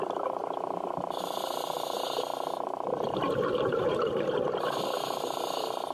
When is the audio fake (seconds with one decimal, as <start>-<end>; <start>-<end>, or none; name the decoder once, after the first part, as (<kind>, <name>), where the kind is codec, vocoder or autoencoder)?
none